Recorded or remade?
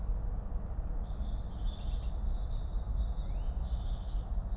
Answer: recorded